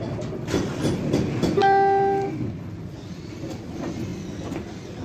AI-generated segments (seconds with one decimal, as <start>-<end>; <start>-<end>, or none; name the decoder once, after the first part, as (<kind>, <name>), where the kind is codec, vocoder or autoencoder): none

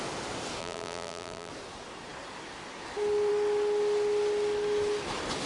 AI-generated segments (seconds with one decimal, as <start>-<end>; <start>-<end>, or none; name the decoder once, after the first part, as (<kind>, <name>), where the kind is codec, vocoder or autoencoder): 0.6-1.5 (vocoder, BigVGAN v2)

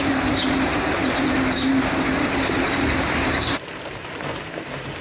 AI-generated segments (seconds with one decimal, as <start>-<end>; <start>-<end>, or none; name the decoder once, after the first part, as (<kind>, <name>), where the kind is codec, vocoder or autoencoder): 0.0-5.0 (vocoder, BigVGAN v2)

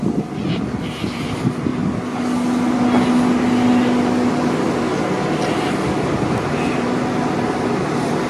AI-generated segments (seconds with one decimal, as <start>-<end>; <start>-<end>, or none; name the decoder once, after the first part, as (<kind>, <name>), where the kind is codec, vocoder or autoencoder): 0.0-1.7 (vocoder, BigVGAN v2); 4.3-4.9; 5.6-8.3

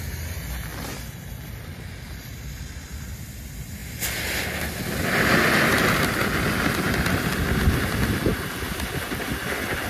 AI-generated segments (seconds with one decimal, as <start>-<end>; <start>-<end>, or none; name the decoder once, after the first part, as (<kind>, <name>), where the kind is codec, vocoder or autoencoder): none

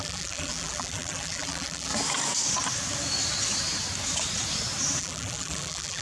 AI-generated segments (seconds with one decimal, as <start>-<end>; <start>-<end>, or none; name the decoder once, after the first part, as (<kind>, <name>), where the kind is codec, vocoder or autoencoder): 0.0-1.9 (vocoder, BigVGAN v2); 5.0-6.0